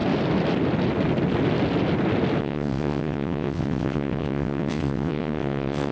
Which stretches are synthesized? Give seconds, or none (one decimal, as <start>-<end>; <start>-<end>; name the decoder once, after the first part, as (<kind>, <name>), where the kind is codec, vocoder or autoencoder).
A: 2.4-5.9 (vocoder, WaveNeXt)

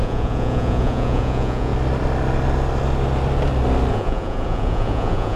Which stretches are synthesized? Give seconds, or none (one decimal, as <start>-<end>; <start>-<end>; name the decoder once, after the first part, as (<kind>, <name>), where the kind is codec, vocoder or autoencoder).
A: 0.0-1.7 (vocoder, Vocos); 3.9-5.4